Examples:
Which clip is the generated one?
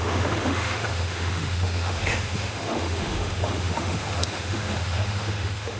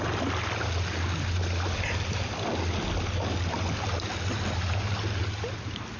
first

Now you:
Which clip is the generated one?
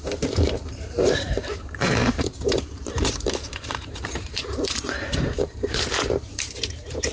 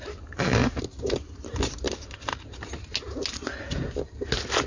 first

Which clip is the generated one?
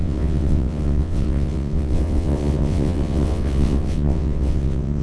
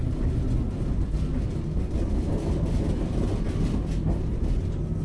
first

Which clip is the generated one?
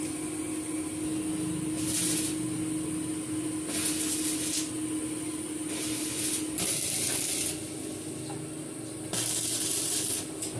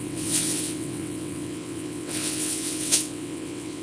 second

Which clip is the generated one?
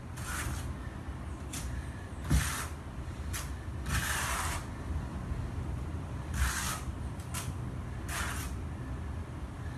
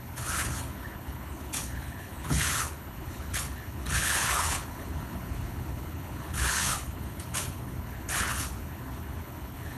second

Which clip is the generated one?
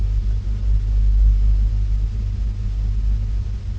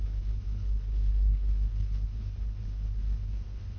second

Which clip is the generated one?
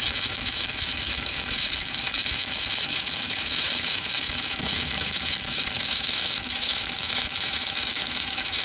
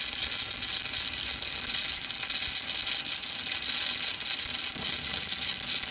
first